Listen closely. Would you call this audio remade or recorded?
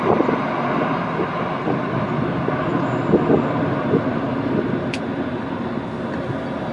recorded